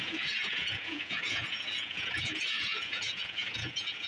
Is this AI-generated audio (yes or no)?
yes